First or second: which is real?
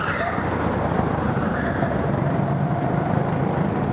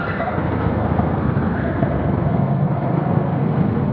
first